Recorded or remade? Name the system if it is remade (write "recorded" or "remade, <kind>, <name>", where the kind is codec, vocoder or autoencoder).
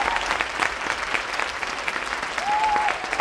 recorded